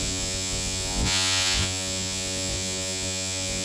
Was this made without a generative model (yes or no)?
no